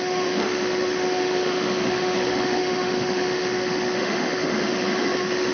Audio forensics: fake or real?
fake